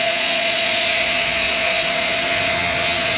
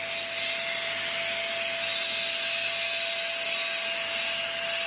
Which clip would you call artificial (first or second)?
first